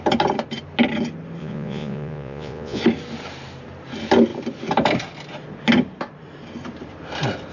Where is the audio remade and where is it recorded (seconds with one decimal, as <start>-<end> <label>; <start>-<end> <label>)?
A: 0.0-1.4 recorded; 1.4-2.8 remade; 2.8-7.5 recorded